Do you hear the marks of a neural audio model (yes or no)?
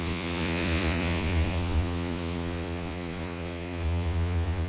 yes